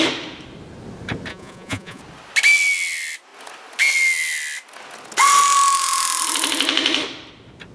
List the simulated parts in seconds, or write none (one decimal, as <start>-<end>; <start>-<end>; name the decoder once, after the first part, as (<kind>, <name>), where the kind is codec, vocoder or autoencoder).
1.3-2.0 (vocoder, Vocos)